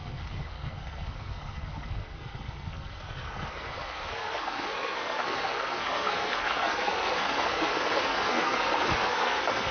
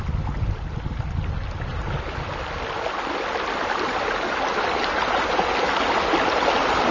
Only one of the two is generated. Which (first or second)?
first